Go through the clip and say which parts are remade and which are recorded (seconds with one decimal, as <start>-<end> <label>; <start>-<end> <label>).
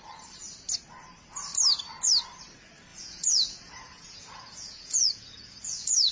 0.0-2.9 recorded; 2.9-6.1 remade